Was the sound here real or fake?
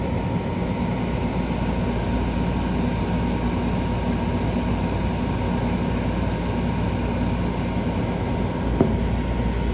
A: real